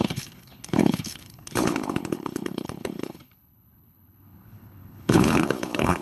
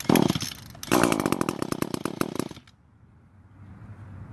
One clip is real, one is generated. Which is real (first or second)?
second